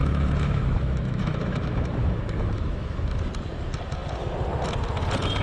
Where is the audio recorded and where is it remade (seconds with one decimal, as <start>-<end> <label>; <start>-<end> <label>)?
0.0-3.2 remade; 3.2-5.4 recorded